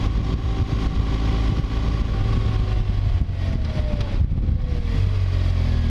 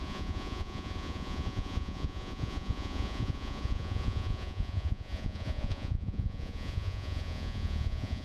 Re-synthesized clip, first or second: second